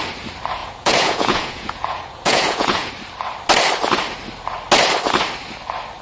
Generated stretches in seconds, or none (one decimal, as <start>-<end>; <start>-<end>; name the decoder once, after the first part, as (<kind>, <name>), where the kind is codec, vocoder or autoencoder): 0.6-2.9 (vocoder, Vocos)